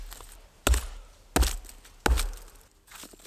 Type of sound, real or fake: real